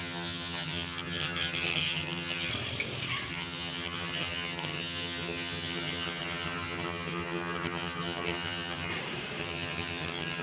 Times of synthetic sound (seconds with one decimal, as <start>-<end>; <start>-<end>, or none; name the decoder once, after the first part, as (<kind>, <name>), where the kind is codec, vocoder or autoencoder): 0.0-2.5 (vocoder, HiFi-GAN); 3.3-8.9; 9.4-10.4